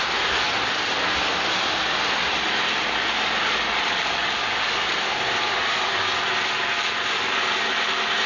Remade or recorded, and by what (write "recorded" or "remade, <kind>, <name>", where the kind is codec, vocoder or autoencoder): recorded